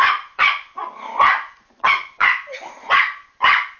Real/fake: fake